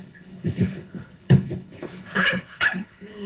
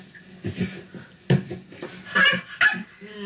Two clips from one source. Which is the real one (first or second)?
second